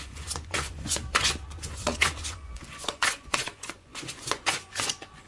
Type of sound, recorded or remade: remade